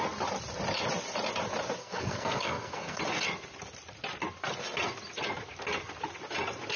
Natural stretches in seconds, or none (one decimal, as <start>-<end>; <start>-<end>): 0.0-1.8; 3.0-6.8